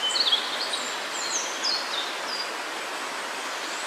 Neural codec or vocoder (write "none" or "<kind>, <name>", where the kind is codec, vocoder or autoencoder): none